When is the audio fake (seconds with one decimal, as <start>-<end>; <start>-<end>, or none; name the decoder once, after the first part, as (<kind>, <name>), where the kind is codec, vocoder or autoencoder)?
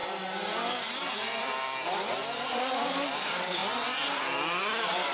0.0-3.6 (vocoder, BigVGAN v2); 4.6-5.1